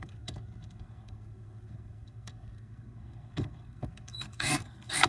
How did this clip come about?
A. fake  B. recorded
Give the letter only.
A